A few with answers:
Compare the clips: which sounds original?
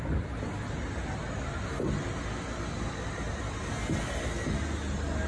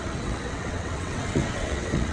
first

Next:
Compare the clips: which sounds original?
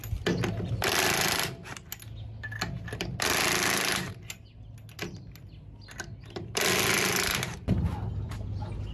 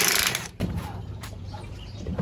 first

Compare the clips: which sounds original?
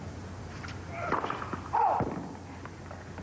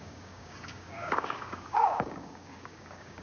first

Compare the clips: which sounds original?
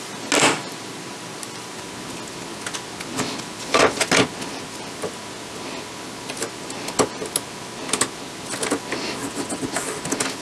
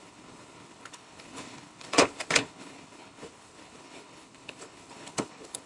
first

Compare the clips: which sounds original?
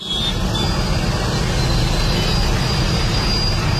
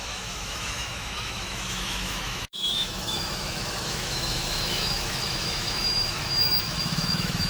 first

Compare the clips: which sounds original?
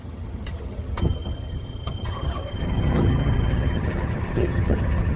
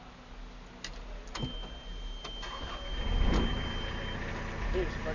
second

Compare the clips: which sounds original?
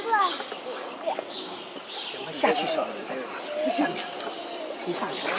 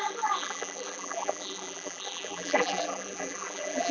first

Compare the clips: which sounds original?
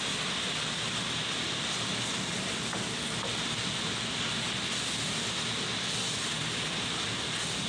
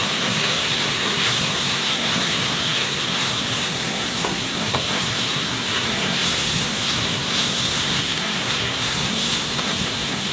first